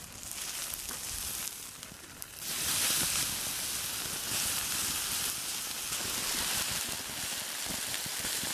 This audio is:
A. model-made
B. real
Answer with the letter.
B